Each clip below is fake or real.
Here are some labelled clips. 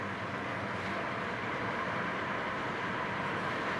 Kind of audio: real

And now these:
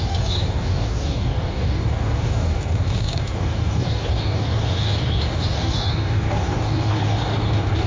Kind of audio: fake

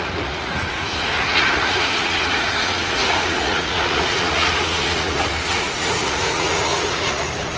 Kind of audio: fake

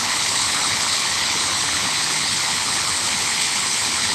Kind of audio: fake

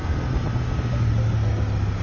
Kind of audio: real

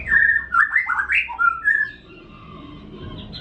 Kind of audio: real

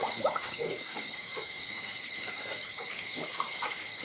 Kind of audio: fake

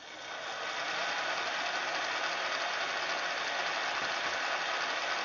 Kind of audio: real